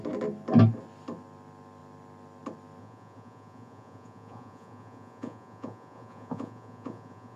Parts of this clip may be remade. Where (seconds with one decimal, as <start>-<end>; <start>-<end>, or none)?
2.8-7.4